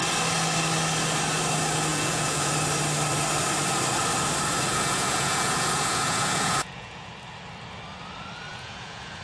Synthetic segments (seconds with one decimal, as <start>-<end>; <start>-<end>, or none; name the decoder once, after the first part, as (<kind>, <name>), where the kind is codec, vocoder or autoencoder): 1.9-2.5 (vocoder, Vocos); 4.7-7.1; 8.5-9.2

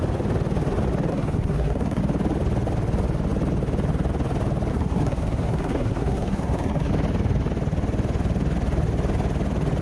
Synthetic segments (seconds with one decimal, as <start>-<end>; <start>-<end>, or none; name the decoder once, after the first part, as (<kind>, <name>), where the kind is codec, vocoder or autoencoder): 1.1-2.0 (codec, SNAC); 4.7-6.9

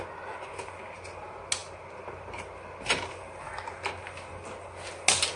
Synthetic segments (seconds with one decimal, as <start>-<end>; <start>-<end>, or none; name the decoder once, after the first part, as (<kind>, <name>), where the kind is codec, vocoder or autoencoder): 1.6-3.5 (vocoder, BigVGAN v2)

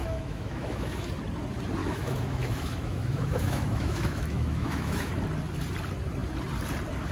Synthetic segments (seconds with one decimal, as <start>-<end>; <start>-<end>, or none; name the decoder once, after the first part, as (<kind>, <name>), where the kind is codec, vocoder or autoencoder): 0.0-1.1 (autoencoder, DAC-VAE); 1.8-5.1

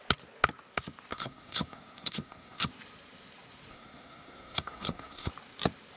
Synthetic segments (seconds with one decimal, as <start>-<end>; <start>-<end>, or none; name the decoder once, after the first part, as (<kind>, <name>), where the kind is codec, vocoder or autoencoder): 1.1-2.7 (codec, SNAC); 3.7-5.3